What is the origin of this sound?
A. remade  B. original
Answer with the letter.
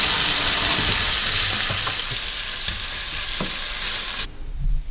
B